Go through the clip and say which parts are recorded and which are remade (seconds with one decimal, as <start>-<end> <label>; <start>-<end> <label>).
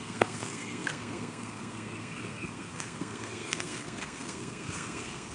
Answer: 0.0-5.3 remade